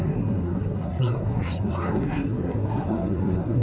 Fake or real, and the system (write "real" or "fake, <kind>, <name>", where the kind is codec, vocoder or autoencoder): fake, codec, SNAC